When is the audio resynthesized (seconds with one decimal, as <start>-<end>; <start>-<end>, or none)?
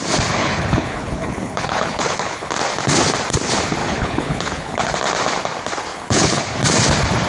0.4-2.5; 3.8-4.9; 5.9-6.4